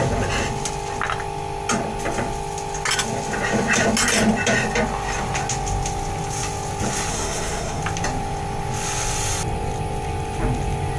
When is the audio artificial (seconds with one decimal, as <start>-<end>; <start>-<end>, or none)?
7.1-7.8